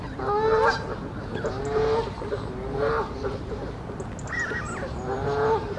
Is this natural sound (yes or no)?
yes